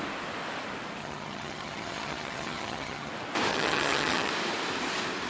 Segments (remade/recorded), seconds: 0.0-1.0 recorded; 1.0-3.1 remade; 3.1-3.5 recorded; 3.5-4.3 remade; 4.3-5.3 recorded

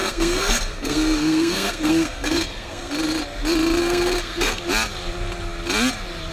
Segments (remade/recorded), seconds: 0.0-2.9 remade; 2.9-3.8 recorded; 3.8-4.6 remade; 4.6-6.3 recorded

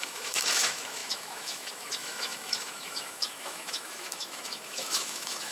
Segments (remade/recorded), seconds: 0.0-5.5 remade

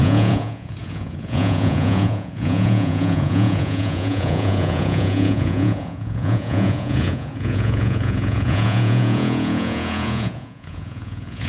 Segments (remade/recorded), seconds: 0.0-11.5 remade

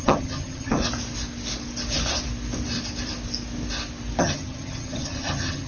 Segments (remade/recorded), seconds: 0.0-0.8 remade; 0.8-4.2 recorded; 4.2-5.7 remade

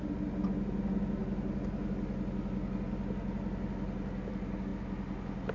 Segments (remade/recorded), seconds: 0.0-5.5 recorded

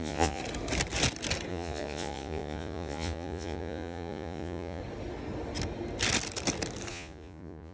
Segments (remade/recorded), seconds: 0.0-0.4 remade; 0.4-1.5 recorded; 1.5-4.8 remade; 4.8-6.9 recorded; 6.9-7.7 remade